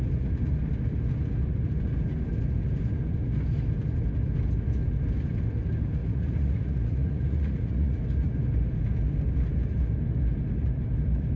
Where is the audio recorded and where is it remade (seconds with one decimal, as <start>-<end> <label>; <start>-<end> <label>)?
0.0-6.0 recorded; 6.0-8.0 remade; 8.0-11.4 recorded